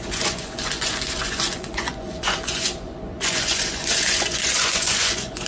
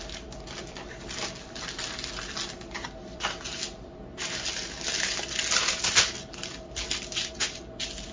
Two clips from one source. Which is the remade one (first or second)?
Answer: first